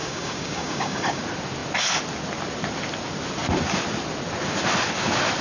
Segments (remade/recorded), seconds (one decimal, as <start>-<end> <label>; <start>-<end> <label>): 0.0-1.2 remade; 1.2-5.4 recorded